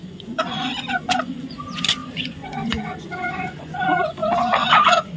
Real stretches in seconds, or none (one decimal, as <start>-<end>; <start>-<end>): none